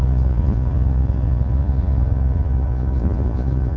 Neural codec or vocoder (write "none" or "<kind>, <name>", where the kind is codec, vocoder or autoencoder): vocoder, Vocos